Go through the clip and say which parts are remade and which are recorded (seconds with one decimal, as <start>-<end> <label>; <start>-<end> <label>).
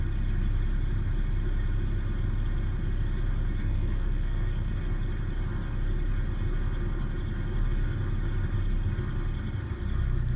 0.0-3.6 recorded; 3.6-4.7 remade; 4.7-10.4 recorded